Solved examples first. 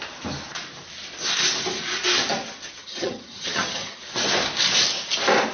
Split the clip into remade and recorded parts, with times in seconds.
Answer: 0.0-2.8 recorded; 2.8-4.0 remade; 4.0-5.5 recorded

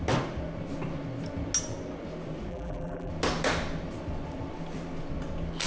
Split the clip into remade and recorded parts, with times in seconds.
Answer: 0.0-2.5 recorded; 2.5-3.1 remade; 3.1-5.7 recorded

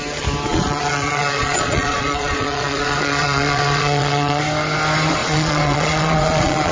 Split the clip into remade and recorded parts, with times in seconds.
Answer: 0.0-0.5 recorded; 0.5-4.4 remade; 4.4-5.2 recorded; 5.2-6.7 remade